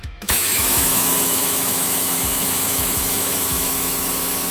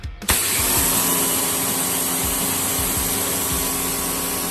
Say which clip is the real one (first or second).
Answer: second